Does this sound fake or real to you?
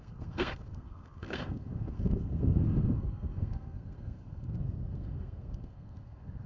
fake